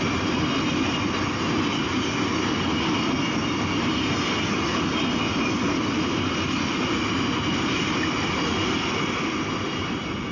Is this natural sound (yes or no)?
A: yes